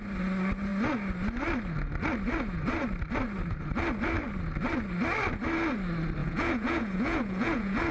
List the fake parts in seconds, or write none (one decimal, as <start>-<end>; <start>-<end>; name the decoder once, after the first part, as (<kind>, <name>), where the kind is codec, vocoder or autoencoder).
6.2-7.9 (vocoder, Vocos)